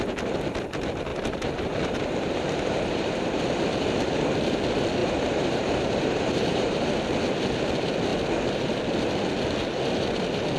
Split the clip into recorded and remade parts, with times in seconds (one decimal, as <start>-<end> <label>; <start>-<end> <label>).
0.0-1.1 recorded; 1.1-3.4 remade; 3.4-5.0 recorded; 5.0-6.9 remade; 6.9-10.6 recorded